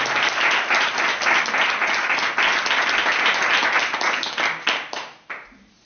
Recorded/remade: recorded